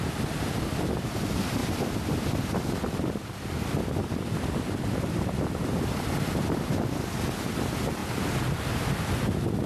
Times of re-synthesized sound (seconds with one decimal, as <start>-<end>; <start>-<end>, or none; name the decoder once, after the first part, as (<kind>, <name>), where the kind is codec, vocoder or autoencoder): 1.6-5.3 (vocoder, BigVGAN v2); 8.0-8.6